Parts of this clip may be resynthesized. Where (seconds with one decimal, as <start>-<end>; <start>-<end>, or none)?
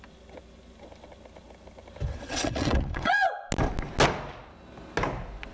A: 2.1-3.3